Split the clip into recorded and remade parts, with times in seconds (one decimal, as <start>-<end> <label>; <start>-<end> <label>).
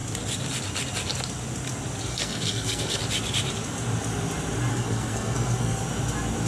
0.0-2.1 recorded; 2.1-3.0 remade; 3.0-4.7 recorded; 4.7-5.8 remade; 5.8-6.5 recorded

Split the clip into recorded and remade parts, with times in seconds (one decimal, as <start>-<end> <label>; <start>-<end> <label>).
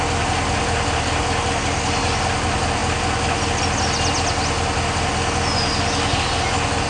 0.0-6.9 recorded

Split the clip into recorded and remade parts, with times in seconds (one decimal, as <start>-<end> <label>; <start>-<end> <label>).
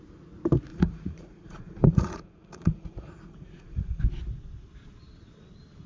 0.0-0.7 recorded; 0.7-4.0 remade; 4.0-5.9 recorded